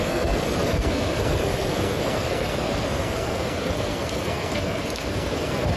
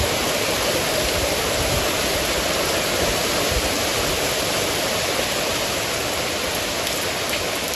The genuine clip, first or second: second